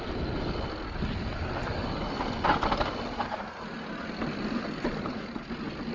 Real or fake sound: real